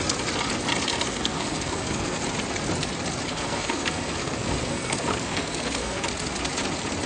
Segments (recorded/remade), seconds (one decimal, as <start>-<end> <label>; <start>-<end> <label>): 0.0-1.1 recorded; 1.1-2.2 remade; 2.2-3.3 recorded; 3.3-6.1 remade; 6.1-7.1 recorded